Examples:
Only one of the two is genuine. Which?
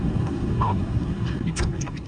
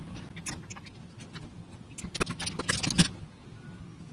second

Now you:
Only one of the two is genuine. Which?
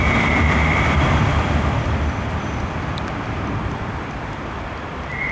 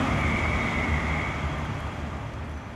second